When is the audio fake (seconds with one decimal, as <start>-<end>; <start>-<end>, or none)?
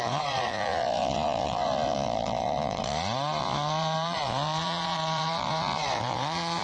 0.0-2.8; 3.4-6.6